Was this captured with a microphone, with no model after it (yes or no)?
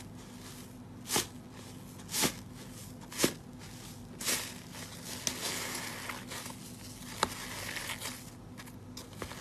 yes